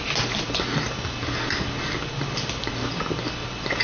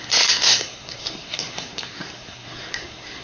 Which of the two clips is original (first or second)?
first